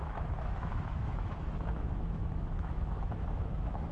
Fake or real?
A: fake